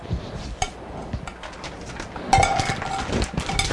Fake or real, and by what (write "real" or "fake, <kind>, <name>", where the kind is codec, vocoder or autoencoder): real